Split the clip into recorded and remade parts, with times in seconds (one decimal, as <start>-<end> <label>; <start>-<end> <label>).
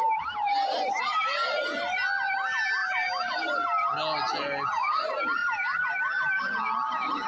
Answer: 0.0-7.3 recorded